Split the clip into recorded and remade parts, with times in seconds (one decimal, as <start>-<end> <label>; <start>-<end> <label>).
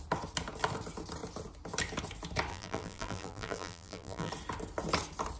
0.0-2.5 recorded; 2.5-4.3 remade; 4.3-5.4 recorded